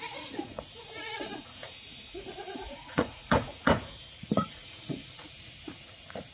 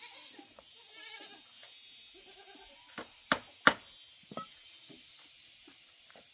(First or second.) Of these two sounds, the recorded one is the second